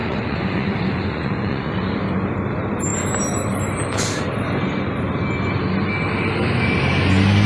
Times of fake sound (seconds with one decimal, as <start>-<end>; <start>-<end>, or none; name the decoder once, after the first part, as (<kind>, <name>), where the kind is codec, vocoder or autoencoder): 0.0-1.7 (vocoder, Vocos)